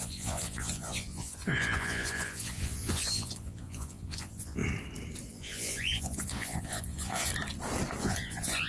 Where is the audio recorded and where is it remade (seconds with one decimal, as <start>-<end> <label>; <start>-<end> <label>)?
0.0-4.6 remade; 4.6-5.3 recorded; 5.3-7.3 remade; 7.3-8.0 recorded; 8.0-8.7 remade